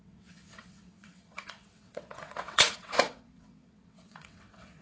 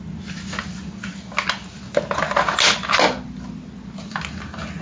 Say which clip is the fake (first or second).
first